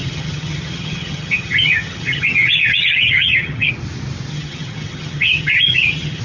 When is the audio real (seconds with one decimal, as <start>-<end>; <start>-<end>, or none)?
3.7-4.3